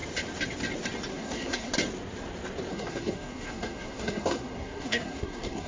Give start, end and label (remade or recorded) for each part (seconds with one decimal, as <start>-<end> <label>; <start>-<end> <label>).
0.0-1.1 recorded; 1.1-1.7 remade; 1.7-2.7 recorded; 2.7-5.7 remade